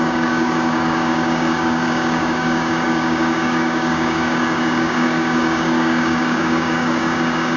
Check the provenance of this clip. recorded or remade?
remade